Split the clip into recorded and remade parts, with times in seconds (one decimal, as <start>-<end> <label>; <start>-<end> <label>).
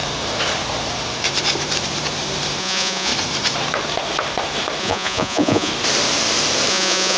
0.0-2.6 recorded; 2.6-3.1 remade; 3.1-4.8 recorded; 4.8-5.7 remade; 5.7-6.7 recorded; 6.7-7.2 remade